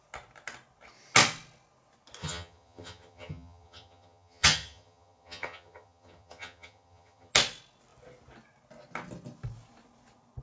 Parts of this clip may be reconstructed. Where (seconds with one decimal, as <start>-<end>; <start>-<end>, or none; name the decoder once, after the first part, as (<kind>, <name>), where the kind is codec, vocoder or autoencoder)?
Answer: 2.2-7.3 (vocoder, HiFi-GAN)